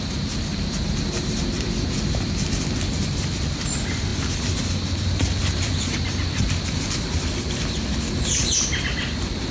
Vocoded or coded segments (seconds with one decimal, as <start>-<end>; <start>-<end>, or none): 0.5-2.5